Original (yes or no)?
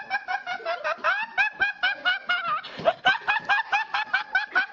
yes